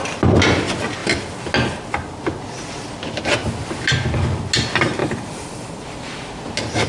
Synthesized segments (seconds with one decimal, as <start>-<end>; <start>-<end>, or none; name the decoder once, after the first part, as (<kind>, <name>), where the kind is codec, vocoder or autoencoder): 5.0-6.2 (vocoder, BigVGAN v2)